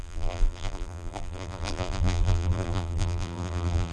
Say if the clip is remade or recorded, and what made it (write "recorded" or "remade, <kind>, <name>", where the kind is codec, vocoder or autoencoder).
remade, vocoder, BigVGAN v2